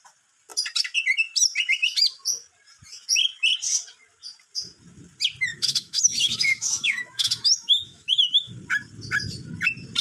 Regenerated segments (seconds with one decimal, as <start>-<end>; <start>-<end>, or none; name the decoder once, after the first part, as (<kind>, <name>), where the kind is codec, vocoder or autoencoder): 5.5-8.5 (autoencoder, DAC-VAE)